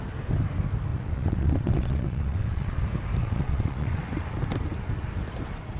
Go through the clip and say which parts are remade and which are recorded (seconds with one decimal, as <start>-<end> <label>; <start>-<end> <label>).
0.0-0.9 recorded; 0.9-2.8 remade; 2.8-3.2 recorded; 3.2-4.0 remade; 4.0-5.8 recorded